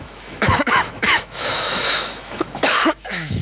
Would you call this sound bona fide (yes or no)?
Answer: no